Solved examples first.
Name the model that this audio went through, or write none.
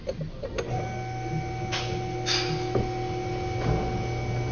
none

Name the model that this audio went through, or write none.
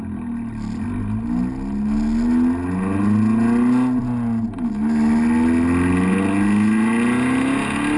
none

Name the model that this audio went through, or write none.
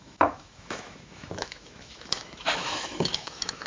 autoencoder, DAC-VAE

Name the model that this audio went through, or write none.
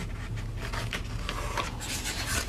none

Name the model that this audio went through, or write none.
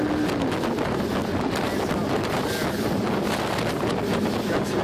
none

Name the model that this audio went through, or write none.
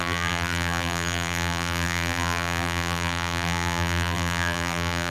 vocoder, BigVGAN v2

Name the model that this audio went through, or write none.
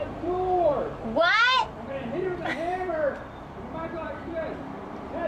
vocoder, BigVGAN v2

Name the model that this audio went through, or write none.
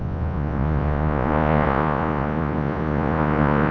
vocoder, Vocos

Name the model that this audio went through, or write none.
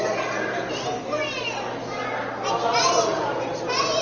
none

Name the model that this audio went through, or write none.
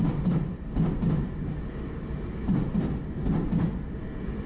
none